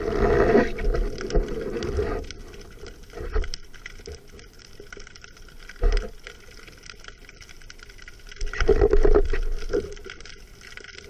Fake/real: real